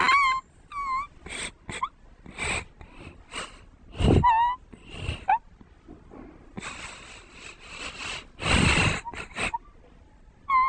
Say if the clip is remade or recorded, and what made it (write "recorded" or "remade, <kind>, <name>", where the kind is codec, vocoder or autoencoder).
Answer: recorded